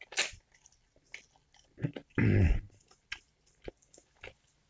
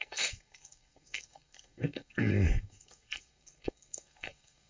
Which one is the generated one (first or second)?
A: second